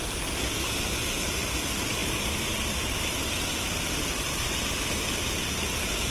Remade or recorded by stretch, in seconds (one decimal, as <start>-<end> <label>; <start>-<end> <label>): 0.0-6.1 recorded